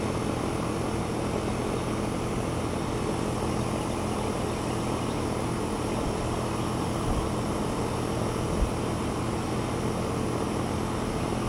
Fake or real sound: real